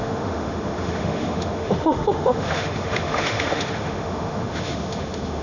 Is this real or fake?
fake